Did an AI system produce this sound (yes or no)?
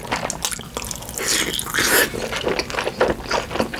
no